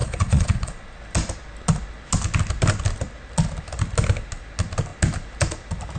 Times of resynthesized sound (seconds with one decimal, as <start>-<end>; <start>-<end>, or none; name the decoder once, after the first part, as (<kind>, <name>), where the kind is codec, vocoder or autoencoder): 0.0-1.0 (vocoder, Vocos)